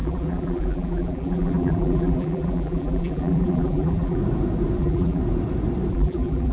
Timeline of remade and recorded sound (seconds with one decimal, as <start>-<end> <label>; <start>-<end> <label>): 0.0-4.2 remade; 4.2-4.8 recorded; 4.8-5.2 remade; 5.2-5.9 recorded; 5.9-6.5 remade